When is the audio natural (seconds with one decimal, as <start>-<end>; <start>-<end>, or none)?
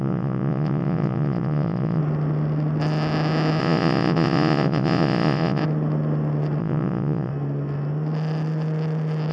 2.0-3.6; 5.6-6.6; 7.3-9.3